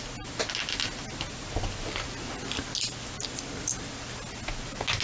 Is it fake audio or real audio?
real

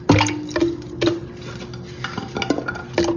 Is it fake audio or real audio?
real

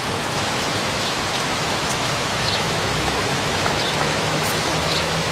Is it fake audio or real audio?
fake